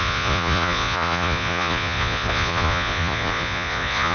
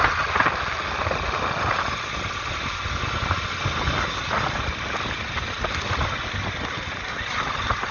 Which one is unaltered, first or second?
second